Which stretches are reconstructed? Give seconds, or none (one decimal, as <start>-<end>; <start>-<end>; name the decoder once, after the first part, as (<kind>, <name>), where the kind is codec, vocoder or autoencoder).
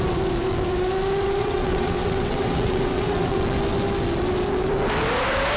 1.4-3.4 (vocoder, WaveNeXt)